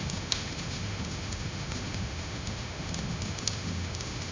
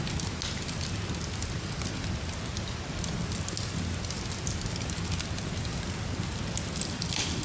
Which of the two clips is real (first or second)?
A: second